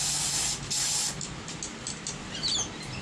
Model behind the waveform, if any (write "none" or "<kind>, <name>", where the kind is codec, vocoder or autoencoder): none